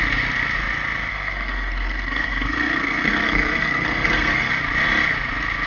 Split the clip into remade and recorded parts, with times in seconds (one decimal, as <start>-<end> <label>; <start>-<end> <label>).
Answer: 0.0-1.1 recorded; 1.1-4.5 remade; 4.5-5.7 recorded